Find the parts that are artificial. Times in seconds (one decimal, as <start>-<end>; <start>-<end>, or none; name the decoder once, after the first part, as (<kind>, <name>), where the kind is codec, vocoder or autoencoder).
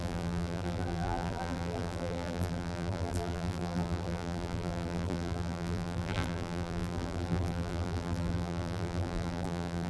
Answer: 0.0-9.9 (vocoder, BigVGAN v2)